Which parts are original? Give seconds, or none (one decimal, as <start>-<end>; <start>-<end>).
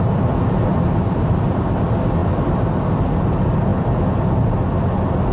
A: 0.0-0.7; 1.8-5.3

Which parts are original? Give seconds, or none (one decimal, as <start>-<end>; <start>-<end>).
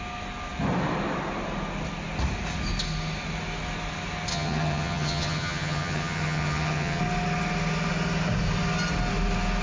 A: 0.0-4.3; 7.0-9.6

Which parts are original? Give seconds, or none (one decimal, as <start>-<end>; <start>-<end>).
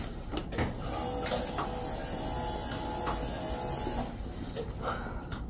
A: 0.0-5.5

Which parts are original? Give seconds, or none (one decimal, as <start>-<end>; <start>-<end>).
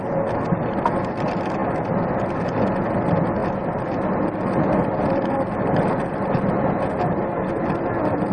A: 0.0-8.3